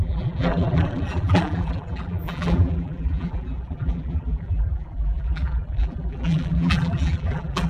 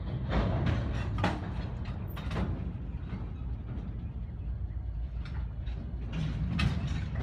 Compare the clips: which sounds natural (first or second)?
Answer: second